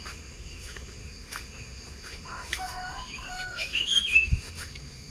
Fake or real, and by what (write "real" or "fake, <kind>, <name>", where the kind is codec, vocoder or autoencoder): fake, autoencoder, DAC-VAE